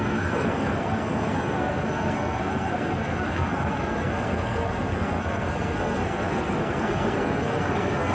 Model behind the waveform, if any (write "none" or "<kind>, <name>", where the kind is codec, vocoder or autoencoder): codec, SNAC